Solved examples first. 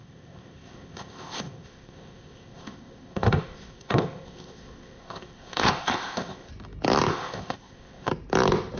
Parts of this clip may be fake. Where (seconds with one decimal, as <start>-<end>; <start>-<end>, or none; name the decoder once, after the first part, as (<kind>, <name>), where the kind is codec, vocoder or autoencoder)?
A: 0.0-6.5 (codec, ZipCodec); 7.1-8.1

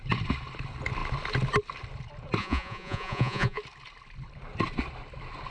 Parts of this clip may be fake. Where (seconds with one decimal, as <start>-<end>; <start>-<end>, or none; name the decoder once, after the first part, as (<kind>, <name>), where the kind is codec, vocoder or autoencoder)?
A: 2.4-3.6 (vocoder, Vocos)

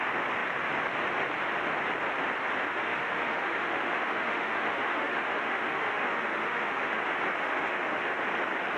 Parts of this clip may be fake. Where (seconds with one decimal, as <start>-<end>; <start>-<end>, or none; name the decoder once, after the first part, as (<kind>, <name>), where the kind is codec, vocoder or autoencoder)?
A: 2.7-7.0 (autoencoder, DAC-VAE); 7.4-8.2